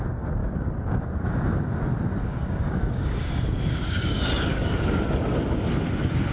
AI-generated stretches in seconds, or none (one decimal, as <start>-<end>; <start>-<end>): 0.4-1.2; 2.2-5.0